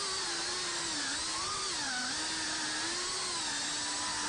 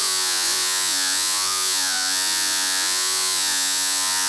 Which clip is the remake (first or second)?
second